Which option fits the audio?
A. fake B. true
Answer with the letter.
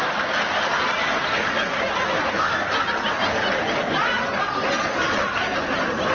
B